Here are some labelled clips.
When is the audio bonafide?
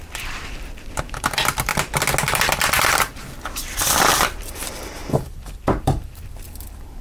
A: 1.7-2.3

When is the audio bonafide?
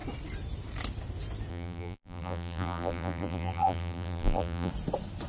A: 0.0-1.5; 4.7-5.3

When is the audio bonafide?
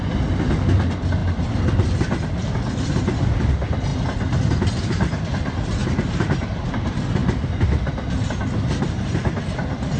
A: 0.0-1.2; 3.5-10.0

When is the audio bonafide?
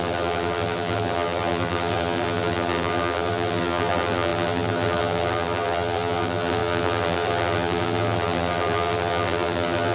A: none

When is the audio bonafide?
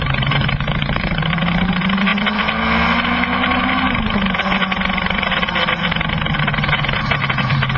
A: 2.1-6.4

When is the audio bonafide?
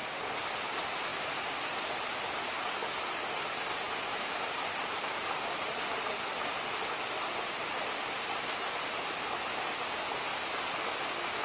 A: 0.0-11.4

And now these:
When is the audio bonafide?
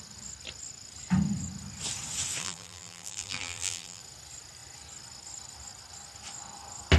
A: 0.0-2.4; 4.0-7.0